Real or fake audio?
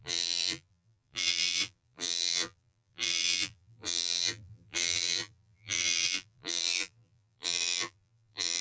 fake